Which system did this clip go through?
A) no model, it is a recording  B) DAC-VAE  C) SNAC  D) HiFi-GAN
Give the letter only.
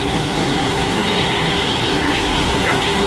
C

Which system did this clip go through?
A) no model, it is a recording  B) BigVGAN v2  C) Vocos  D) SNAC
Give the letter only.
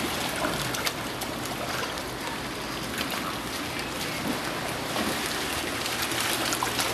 A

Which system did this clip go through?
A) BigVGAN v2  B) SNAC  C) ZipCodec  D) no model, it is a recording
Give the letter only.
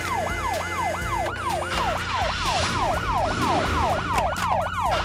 D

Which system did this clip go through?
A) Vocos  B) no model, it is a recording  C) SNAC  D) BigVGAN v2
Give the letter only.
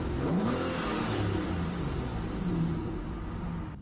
B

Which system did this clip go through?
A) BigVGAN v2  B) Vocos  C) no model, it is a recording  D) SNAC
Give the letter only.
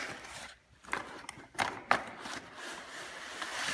C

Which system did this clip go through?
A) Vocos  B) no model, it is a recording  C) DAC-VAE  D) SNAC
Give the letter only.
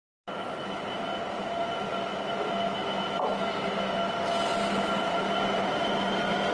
B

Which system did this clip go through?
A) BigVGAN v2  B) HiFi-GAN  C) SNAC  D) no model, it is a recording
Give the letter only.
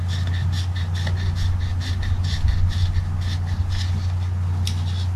D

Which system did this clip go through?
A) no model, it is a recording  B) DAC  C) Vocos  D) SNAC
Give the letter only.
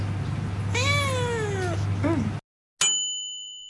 A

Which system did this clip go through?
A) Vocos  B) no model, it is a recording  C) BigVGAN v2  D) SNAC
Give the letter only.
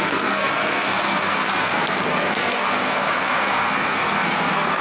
D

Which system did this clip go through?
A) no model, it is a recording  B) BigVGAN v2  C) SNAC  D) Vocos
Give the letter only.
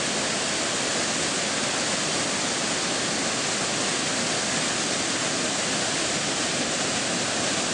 A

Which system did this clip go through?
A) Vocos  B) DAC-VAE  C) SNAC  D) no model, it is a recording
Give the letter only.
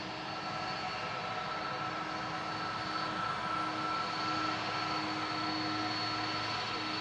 D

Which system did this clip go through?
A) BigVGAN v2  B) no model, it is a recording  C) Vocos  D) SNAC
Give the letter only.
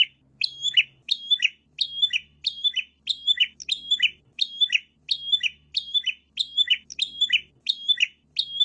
B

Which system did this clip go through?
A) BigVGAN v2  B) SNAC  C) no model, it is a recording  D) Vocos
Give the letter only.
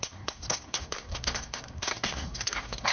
B